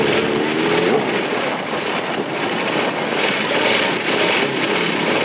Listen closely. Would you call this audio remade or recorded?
recorded